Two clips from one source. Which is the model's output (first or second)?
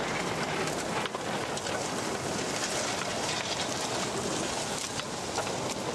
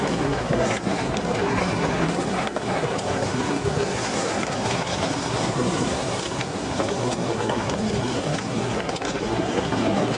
second